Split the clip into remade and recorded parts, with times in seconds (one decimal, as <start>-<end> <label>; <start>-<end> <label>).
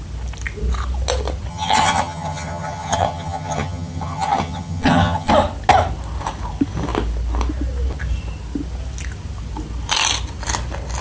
0.0-1.5 recorded; 1.5-5.3 remade; 5.3-11.0 recorded